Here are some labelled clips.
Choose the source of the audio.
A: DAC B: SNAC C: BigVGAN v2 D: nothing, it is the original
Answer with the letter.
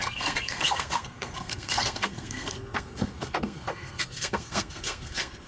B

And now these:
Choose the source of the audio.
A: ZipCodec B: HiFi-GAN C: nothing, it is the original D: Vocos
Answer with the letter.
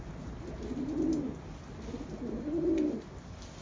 C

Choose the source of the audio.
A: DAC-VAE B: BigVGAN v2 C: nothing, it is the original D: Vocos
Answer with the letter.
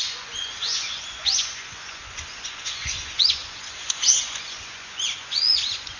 D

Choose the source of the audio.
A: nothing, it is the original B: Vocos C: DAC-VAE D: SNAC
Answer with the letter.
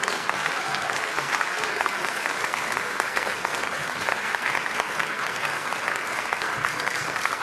D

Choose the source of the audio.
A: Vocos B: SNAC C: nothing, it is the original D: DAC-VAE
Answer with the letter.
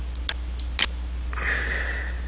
C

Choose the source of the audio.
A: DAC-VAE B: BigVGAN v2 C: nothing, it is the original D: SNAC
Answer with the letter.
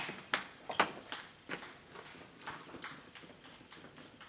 C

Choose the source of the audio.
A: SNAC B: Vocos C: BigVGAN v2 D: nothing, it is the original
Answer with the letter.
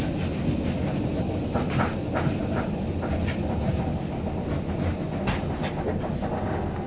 D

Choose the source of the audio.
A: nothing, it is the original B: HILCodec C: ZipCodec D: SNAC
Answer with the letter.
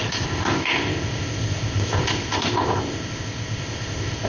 C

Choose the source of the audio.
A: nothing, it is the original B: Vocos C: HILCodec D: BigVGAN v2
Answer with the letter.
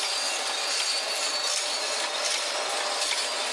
A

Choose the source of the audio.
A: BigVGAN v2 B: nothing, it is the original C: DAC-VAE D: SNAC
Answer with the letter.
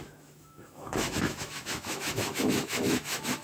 C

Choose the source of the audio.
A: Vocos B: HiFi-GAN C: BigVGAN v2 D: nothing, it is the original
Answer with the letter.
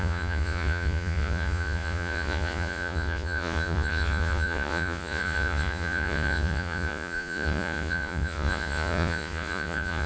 A